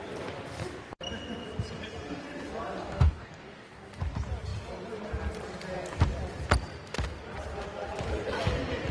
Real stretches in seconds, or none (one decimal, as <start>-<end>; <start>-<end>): 0.0-2.8; 4.0-8.9